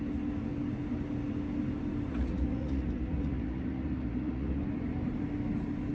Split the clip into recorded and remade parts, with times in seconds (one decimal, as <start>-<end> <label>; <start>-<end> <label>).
0.0-2.1 recorded; 2.1-4.6 remade; 4.6-5.9 recorded